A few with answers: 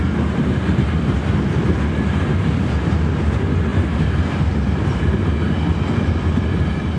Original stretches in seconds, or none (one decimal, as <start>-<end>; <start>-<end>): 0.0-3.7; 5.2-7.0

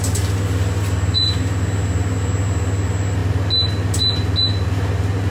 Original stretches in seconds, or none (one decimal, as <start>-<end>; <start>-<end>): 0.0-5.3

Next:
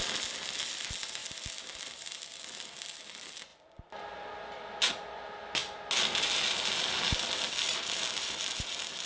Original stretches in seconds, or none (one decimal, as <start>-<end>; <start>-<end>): 0.0-1.2; 2.4-9.1